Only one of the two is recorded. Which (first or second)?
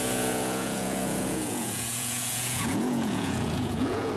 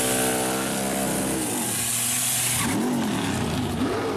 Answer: second